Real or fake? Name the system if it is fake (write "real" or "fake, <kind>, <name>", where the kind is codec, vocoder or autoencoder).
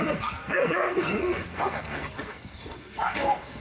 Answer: fake, codec, SNAC